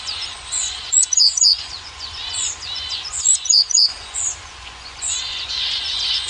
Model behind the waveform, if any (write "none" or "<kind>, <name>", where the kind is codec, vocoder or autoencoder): vocoder, Vocos